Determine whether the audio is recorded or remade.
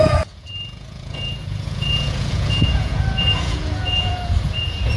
remade